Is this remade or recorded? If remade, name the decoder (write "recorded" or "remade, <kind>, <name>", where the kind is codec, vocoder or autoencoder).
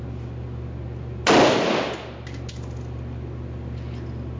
recorded